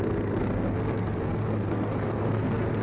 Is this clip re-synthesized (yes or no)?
yes